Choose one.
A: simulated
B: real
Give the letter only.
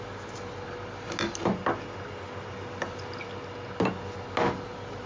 B